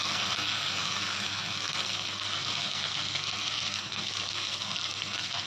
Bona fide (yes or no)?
no